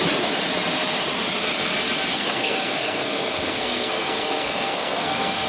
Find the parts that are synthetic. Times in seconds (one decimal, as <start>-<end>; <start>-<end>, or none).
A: 2.1-5.5